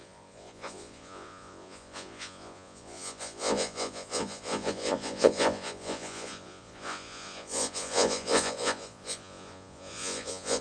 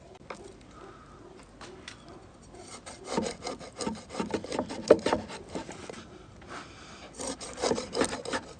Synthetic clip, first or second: first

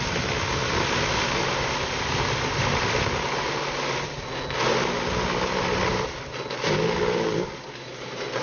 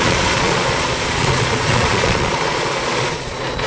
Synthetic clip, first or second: second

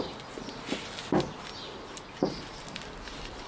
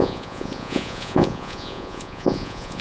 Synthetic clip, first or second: second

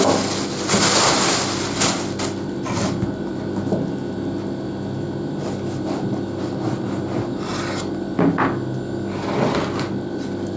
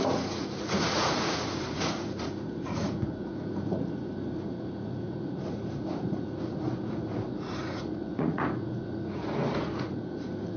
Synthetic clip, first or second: second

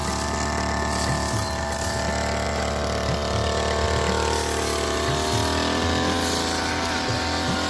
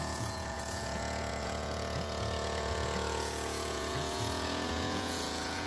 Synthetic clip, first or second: second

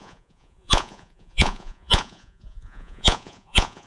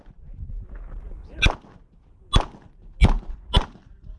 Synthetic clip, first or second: first